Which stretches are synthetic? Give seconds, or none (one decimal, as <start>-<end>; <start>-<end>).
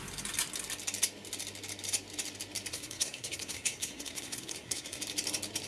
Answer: 2.7-5.0